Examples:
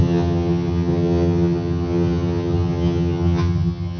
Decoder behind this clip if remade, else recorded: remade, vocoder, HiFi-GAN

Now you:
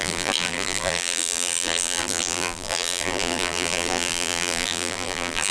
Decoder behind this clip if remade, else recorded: remade, vocoder, BigVGAN v2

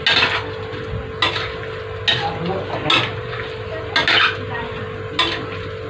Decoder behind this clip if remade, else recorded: recorded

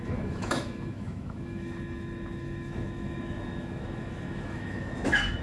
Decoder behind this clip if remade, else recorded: remade, autoencoder, DAC-VAE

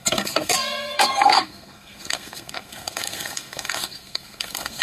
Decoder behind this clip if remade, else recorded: remade, codec, SNAC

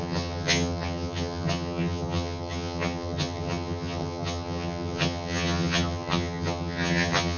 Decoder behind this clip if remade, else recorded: remade, vocoder, HiFi-GAN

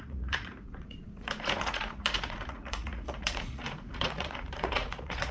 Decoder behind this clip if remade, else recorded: remade, vocoder, Vocos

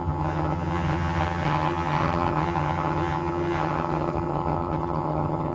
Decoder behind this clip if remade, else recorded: remade, vocoder, HiFi-GAN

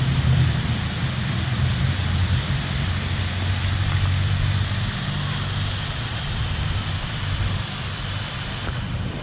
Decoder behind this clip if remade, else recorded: remade, vocoder, BigVGAN v2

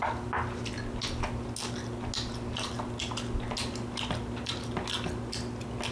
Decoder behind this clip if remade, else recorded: recorded